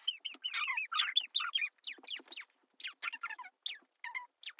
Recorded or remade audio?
recorded